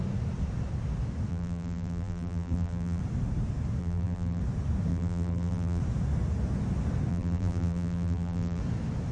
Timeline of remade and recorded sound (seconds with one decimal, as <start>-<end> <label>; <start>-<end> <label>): 0.0-1.3 recorded; 1.3-3.0 remade; 3.0-3.8 recorded; 3.8-4.4 remade; 4.4-4.9 recorded; 4.9-5.8 remade; 5.8-7.1 recorded; 7.1-8.6 remade; 8.6-9.1 recorded